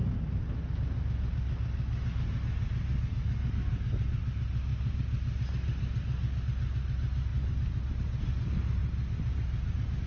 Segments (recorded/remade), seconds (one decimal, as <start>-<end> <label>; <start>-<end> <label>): 0.0-10.1 recorded